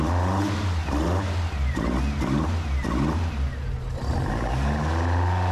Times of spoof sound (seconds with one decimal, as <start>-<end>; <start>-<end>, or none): none